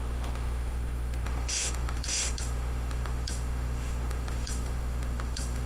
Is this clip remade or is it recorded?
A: remade